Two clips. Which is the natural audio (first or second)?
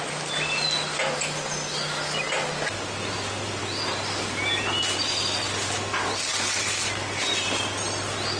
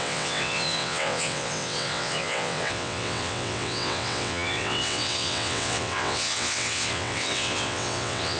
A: first